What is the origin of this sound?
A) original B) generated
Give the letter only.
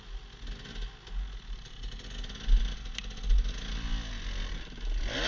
A